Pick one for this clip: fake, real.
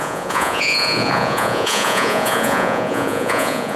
fake